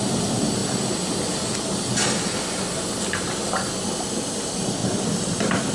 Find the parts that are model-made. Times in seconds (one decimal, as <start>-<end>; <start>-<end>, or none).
4.8-5.7